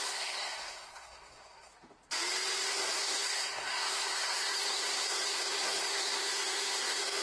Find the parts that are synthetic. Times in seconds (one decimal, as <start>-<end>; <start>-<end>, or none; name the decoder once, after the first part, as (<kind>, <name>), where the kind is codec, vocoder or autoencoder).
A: 0.0-1.7 (codec, SNAC); 2.7-7.2